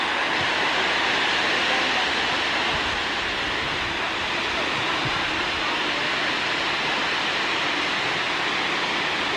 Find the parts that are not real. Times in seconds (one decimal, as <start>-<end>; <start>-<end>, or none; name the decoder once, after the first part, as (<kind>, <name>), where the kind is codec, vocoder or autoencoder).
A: none